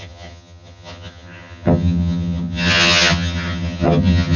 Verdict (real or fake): fake